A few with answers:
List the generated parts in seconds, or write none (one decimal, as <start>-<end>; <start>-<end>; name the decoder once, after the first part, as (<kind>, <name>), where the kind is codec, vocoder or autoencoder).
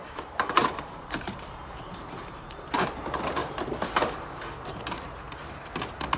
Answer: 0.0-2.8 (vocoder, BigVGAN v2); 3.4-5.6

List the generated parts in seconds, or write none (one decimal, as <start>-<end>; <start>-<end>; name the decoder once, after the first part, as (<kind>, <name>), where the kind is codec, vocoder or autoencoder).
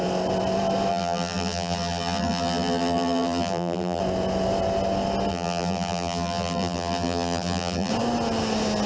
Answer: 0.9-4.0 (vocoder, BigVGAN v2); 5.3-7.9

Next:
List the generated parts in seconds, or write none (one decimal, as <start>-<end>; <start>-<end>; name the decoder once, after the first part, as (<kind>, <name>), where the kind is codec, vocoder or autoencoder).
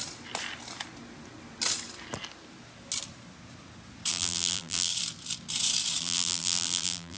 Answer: 4.1-4.9 (vocoder, BigVGAN v2); 6.0-7.2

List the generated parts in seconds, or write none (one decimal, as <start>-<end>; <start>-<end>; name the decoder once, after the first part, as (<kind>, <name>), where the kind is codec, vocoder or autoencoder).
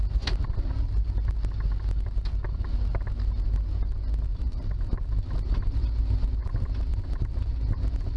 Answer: 4.3-5.8 (vocoder, BigVGAN v2); 6.9-7.5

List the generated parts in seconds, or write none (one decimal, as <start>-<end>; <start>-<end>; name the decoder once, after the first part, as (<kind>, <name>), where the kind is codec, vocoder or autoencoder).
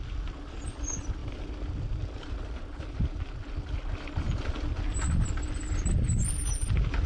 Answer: none